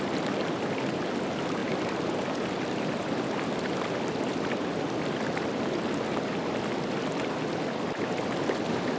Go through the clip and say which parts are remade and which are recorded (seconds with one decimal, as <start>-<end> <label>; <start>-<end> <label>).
0.0-9.0 recorded